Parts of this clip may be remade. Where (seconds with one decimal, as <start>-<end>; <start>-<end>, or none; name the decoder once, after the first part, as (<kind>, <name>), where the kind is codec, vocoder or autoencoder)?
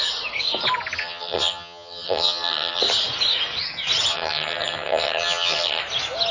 1.0-2.8 (vocoder, HiFi-GAN); 4.1-5.8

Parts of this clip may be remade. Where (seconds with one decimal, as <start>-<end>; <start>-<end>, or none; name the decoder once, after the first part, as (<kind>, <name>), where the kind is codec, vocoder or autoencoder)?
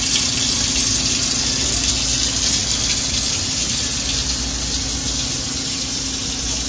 none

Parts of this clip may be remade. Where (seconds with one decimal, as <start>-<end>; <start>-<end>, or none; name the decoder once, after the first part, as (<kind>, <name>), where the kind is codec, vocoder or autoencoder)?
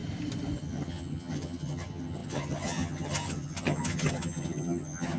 0.6-5.2 (vocoder, HiFi-GAN)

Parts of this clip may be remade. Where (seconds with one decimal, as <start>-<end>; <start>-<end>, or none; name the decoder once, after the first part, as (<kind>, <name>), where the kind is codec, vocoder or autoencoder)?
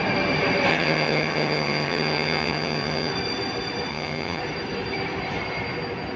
0.7-3.1 (vocoder, HiFi-GAN); 3.9-4.4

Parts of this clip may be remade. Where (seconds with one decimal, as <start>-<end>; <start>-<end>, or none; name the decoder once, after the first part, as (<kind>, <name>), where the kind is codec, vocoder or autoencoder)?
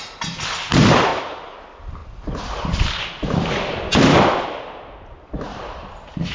none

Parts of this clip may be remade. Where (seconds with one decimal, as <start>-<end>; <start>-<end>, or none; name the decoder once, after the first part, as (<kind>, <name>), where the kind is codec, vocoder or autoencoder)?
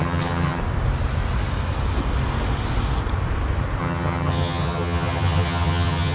0.0-0.6 (vocoder, HiFi-GAN); 3.8-6.1